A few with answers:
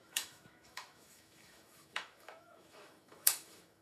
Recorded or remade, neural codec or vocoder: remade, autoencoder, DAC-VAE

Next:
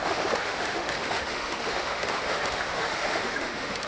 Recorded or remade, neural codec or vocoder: remade, autoencoder, DAC-VAE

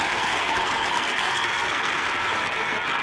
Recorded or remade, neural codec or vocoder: remade, codec, SNAC